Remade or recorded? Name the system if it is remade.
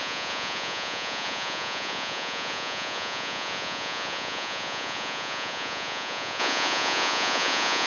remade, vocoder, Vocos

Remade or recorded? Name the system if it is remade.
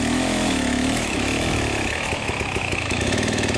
remade, autoencoder, DAC-VAE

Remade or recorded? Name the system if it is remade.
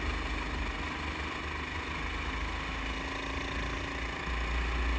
recorded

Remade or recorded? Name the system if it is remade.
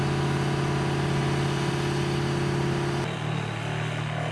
recorded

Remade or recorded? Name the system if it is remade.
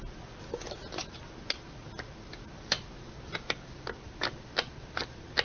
recorded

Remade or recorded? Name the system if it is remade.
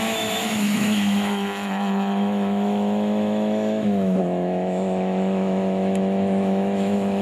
remade, autoencoder, DAC-VAE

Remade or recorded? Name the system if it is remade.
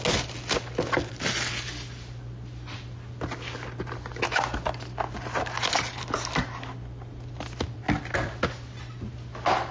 recorded